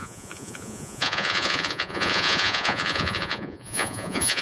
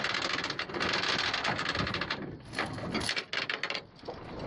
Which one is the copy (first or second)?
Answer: first